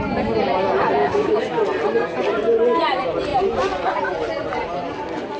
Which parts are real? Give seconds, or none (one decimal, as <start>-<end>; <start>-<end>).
0.0-1.0; 1.6-5.4